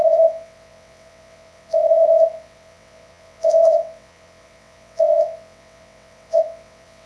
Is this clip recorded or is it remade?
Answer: remade